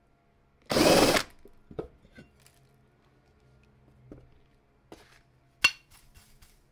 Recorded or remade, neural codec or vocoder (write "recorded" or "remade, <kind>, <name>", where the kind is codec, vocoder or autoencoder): recorded